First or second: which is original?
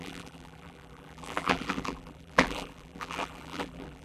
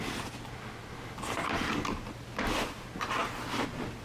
second